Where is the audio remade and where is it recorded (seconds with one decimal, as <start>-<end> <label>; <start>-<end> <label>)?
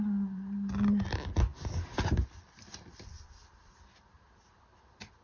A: 0.0-5.2 recorded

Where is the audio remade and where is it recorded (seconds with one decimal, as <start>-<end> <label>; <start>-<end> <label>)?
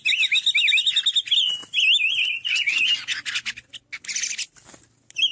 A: 0.0-5.3 recorded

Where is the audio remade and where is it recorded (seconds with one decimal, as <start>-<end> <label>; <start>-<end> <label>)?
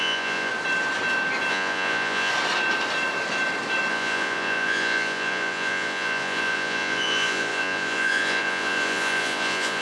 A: 0.0-0.5 remade; 0.5-1.5 recorded; 1.5-2.3 remade; 2.3-3.9 recorded; 3.9-9.8 remade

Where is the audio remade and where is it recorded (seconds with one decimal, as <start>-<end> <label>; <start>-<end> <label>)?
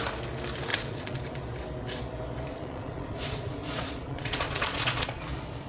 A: 0.0-0.7 recorded; 0.7-1.2 remade; 1.2-2.5 recorded; 2.5-5.2 remade; 5.2-5.7 recorded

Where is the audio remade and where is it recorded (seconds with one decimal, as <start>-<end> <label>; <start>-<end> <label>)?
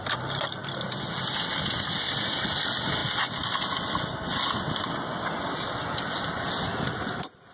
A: 0.0-7.5 recorded